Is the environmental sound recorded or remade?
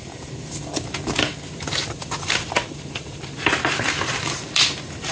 recorded